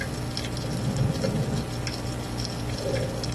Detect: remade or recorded recorded